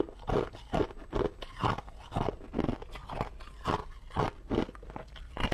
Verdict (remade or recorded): recorded